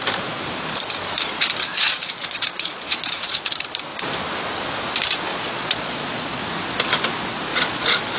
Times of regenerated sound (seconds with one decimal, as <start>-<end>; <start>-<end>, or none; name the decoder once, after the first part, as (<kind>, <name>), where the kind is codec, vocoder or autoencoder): 1.7-3.4 (vocoder, Vocos); 5.3-6.4; 7.5-8.2